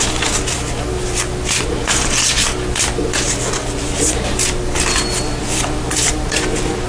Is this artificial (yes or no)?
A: no